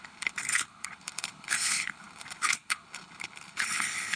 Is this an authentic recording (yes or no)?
no